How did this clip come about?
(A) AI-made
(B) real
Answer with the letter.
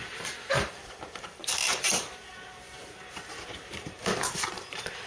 A